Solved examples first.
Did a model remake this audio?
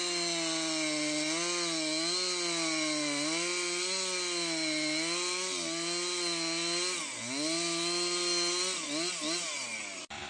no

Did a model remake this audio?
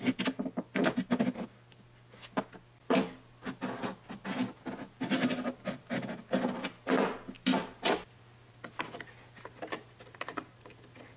no